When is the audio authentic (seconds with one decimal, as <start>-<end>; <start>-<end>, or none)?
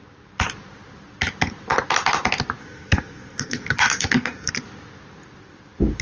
0.0-2.6; 4.5-6.0